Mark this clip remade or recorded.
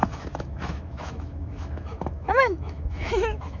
remade